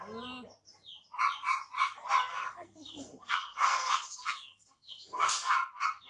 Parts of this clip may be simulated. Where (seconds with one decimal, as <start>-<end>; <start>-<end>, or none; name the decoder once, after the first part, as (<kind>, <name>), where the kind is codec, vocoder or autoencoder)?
2.3-6.1 (codec, SNAC)